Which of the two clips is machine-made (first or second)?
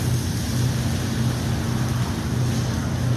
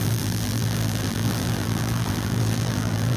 second